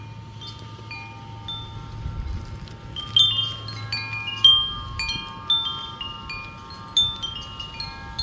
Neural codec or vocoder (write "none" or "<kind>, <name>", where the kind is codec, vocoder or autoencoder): none